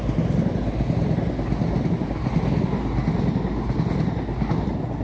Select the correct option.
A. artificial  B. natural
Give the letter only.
B